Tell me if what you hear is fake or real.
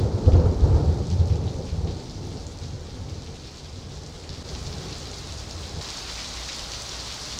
real